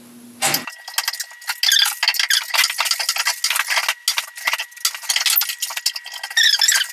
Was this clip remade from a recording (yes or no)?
no